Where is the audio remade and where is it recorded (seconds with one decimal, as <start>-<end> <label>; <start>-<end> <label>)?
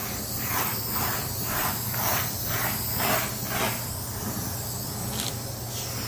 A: 0.0-0.8 remade; 0.8-6.1 recorded